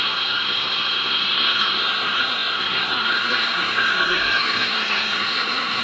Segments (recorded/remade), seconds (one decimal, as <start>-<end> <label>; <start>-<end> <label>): 0.0-5.8 remade